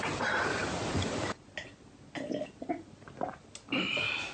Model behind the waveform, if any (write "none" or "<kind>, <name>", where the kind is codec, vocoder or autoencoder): none